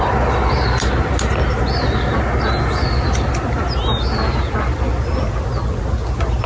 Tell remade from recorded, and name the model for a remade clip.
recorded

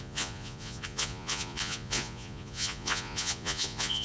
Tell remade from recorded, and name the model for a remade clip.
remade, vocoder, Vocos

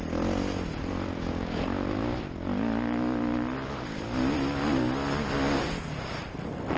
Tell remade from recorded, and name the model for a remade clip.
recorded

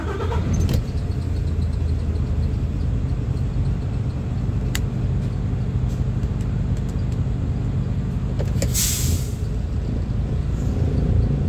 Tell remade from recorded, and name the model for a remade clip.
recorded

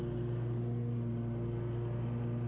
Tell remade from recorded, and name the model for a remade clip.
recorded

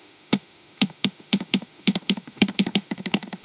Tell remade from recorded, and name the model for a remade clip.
remade, autoencoder, DAC-VAE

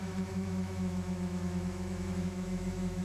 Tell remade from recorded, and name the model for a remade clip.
remade, autoencoder, DAC-VAE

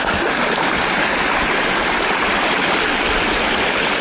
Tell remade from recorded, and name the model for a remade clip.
recorded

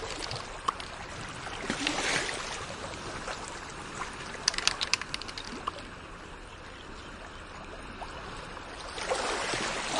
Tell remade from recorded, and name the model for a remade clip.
recorded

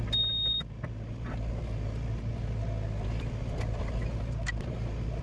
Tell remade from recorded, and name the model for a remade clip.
recorded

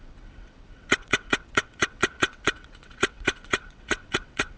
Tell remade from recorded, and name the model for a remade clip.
remade, vocoder, WaveNeXt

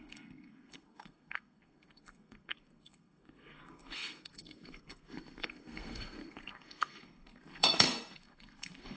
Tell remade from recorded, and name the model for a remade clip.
remade, codec, SNAC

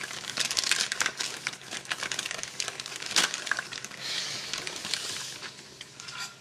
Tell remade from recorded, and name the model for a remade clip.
remade, codec, DAC